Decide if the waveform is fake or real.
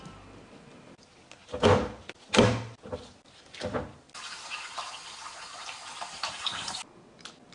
real